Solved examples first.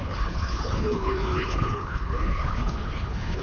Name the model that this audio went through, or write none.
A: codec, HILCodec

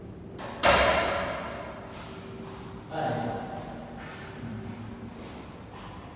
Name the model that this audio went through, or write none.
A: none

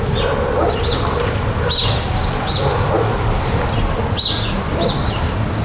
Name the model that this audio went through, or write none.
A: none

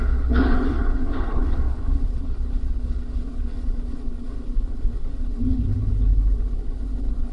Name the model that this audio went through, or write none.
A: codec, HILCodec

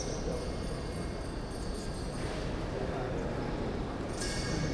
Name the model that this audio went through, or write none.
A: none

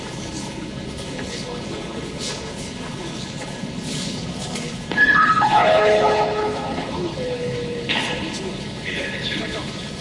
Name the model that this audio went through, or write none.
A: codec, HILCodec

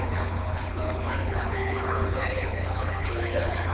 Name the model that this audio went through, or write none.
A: codec, HILCodec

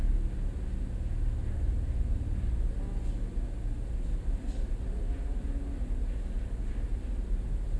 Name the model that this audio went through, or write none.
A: none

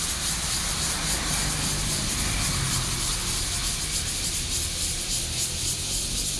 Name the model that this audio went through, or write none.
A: none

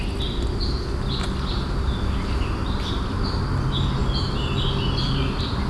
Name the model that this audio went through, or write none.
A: none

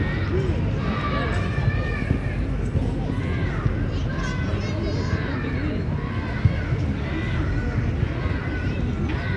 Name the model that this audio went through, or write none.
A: none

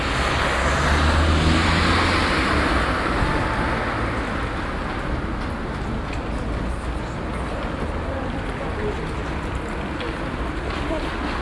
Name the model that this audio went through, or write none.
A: none